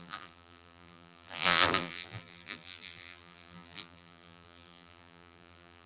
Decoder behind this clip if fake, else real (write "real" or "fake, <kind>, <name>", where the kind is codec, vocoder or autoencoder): fake, vocoder, BigVGAN v2